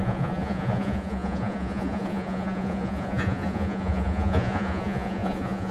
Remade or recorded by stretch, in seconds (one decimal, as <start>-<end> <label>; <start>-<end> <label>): 0.0-5.7 remade